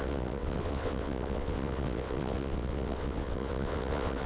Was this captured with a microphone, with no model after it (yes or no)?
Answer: no